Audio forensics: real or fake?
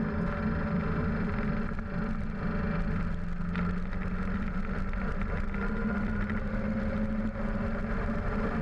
real